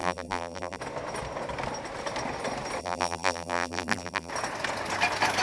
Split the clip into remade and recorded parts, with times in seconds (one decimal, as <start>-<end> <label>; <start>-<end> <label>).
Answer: 0.0-0.8 remade; 0.8-2.8 recorded; 2.8-4.3 remade; 4.3-5.4 recorded